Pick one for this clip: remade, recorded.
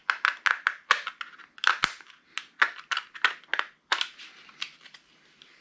recorded